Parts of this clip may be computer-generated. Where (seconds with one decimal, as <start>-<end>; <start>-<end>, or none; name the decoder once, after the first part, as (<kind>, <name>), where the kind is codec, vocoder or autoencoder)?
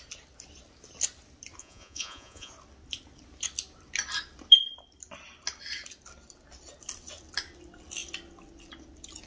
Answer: 1.6-2.5 (vocoder, Vocos)